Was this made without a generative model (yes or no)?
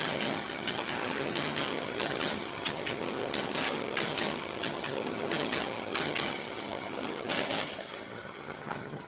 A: no